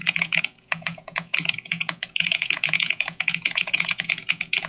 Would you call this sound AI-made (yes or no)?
yes